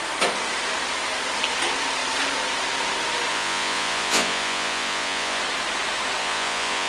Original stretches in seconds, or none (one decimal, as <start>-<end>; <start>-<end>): 0.0-3.3; 5.4-6.2